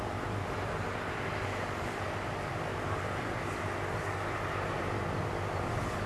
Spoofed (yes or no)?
no